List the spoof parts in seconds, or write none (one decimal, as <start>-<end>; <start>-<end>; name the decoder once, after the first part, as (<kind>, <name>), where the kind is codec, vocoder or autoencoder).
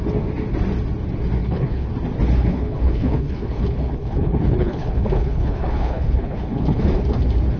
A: 1.4-1.9 (codec, HILCodec); 2.5-6.9